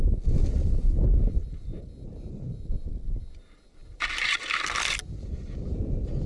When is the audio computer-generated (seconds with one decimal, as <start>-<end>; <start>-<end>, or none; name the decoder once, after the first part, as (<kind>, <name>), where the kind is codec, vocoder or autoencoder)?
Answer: none